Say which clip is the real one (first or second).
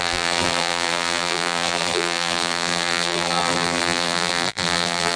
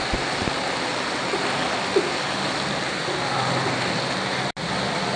second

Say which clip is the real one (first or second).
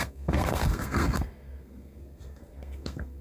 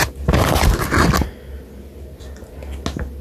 second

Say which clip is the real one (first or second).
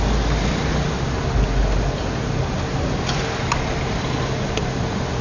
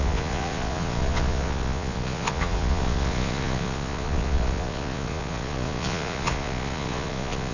first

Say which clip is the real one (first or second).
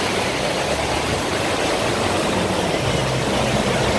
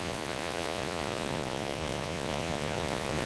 first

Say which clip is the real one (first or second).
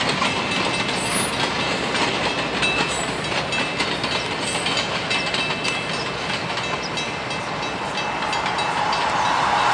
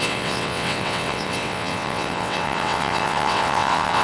first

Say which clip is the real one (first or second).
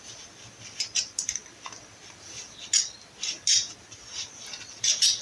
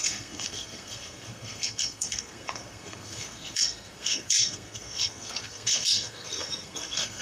first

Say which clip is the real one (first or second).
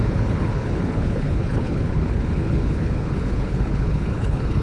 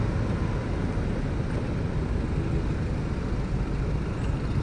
second